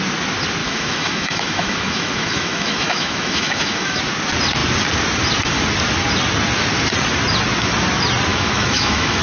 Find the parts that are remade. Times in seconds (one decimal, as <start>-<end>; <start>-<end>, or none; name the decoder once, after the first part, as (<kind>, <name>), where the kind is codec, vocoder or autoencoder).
0.6-4.0 (autoencoder, DAC-VAE); 8.3-9.2